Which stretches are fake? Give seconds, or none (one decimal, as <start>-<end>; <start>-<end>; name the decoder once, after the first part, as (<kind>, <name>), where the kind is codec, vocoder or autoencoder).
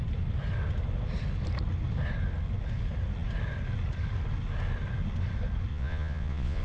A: 5.7-6.6 (vocoder, Vocos)